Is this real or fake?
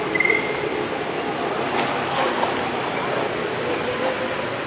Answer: real